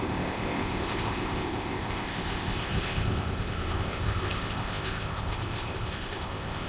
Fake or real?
fake